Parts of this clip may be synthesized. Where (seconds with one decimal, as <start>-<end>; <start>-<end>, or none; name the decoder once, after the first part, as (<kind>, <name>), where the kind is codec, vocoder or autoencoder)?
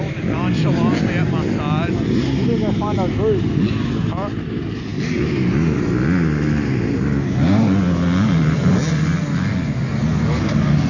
none